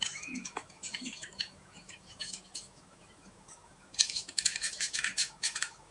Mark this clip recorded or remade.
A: remade